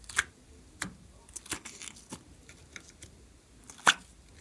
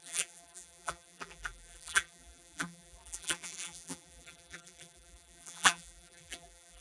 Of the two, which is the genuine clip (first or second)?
first